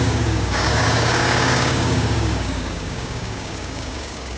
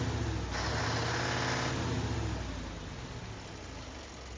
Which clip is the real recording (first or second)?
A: second